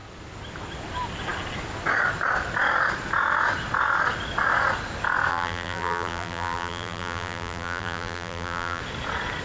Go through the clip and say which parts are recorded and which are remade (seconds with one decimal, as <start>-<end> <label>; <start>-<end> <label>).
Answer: 0.0-5.3 recorded; 5.3-8.8 remade; 8.8-9.4 recorded

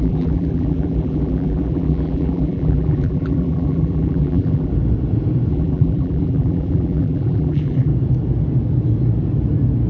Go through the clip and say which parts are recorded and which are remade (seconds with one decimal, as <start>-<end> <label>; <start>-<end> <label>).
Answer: 0.0-4.7 remade; 4.7-5.5 recorded; 5.5-7.9 remade; 7.9-9.9 recorded

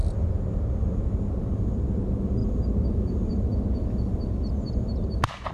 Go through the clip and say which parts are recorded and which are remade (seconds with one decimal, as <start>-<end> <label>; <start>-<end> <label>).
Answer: 0.0-2.4 recorded; 2.4-5.5 remade

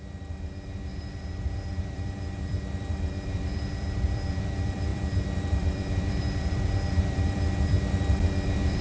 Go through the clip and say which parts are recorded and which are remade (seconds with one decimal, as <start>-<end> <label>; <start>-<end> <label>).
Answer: 0.0-8.8 remade

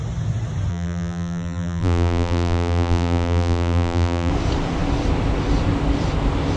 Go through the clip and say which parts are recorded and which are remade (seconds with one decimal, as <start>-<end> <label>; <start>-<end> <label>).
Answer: 0.0-0.7 recorded; 0.7-4.3 remade; 4.3-6.6 recorded

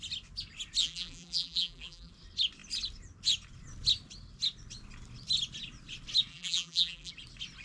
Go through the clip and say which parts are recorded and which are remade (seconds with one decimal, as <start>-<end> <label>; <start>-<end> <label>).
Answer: 0.0-0.8 recorded; 0.8-2.1 remade; 2.1-6.3 recorded; 6.3-7.1 remade; 7.1-7.6 recorded

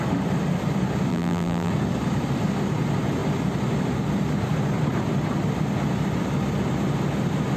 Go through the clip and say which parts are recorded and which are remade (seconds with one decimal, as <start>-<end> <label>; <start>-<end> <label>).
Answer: 0.0-1.1 recorded; 1.1-1.7 remade; 1.7-7.6 recorded

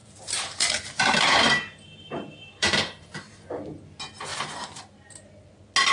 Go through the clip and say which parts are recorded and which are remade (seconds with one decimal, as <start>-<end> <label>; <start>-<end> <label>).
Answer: 0.0-3.5 remade; 3.5-4.3 recorded; 4.3-4.8 remade; 4.8-5.9 recorded